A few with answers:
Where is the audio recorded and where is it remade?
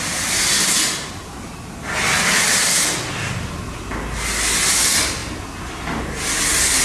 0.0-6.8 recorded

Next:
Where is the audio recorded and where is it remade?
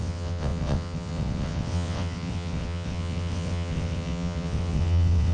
0.0-5.3 remade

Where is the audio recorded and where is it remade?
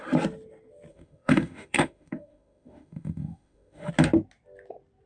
0.0-0.9 recorded; 0.9-3.9 remade; 3.9-5.1 recorded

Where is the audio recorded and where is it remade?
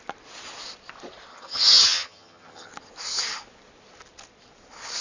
0.0-1.3 recorded; 1.3-2.7 remade; 2.7-5.0 recorded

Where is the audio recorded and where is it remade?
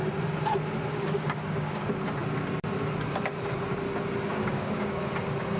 0.0-0.9 recorded; 0.9-1.8 remade; 1.8-4.3 recorded; 4.3-5.0 remade; 5.0-5.6 recorded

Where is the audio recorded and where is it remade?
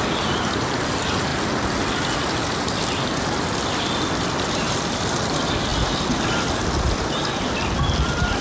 0.0-8.4 recorded